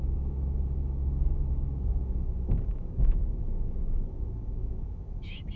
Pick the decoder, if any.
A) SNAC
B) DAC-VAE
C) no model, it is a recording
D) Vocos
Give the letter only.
B